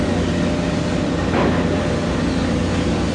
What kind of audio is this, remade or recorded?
recorded